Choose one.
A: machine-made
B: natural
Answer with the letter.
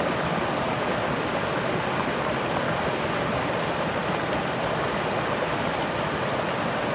B